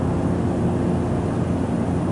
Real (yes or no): yes